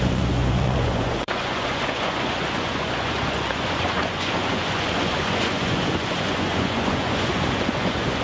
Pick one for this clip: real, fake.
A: fake